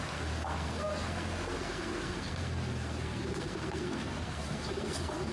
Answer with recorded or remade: remade